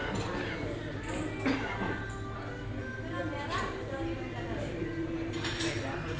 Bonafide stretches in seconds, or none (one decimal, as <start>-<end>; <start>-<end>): 0.0-3.6